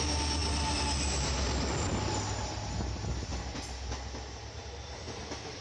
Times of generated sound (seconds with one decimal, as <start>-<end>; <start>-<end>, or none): none